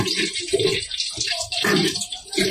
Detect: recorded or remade remade